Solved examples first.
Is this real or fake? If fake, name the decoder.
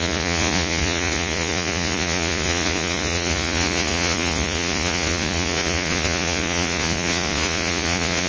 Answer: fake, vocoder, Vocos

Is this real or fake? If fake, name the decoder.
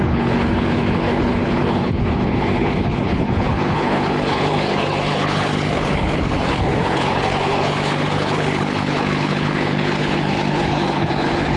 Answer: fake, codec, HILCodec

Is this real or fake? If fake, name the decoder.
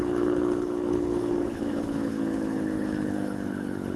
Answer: fake, codec, HILCodec